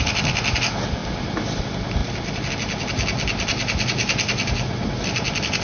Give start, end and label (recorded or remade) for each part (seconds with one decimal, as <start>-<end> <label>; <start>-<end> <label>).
0.0-5.6 recorded